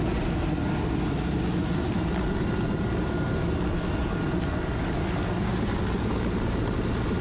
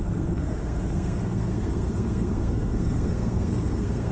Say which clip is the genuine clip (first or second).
first